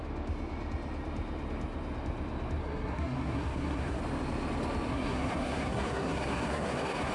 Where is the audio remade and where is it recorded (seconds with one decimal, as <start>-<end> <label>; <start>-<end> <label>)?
0.0-2.6 recorded; 2.6-4.0 remade; 4.0-4.9 recorded; 4.9-7.1 remade